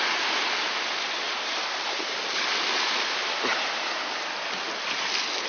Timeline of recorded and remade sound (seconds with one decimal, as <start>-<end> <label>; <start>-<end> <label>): 0.0-5.5 recorded